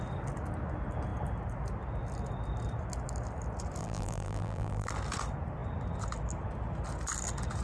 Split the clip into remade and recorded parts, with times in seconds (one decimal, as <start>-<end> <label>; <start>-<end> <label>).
0.0-3.8 recorded; 3.8-4.9 remade; 4.9-7.6 recorded